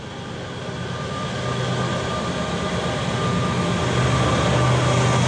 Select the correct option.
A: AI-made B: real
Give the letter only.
B